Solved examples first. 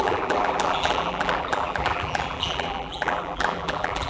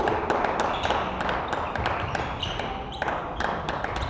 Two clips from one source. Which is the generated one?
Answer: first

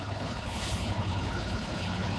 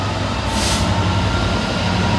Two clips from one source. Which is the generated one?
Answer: first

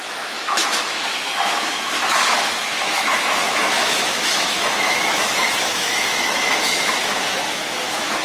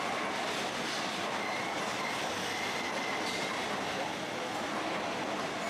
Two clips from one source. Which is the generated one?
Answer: first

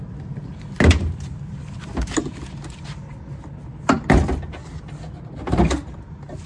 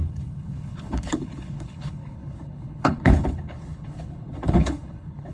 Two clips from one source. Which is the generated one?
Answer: second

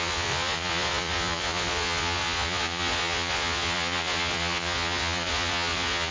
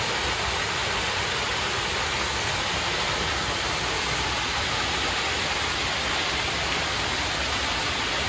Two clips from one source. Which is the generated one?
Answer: first